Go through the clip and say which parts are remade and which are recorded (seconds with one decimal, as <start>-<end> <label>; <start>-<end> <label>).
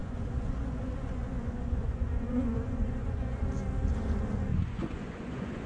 0.0-3.4 remade; 3.4-4.5 recorded; 4.5-5.7 remade